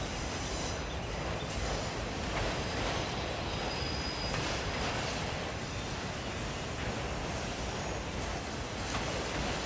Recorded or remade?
recorded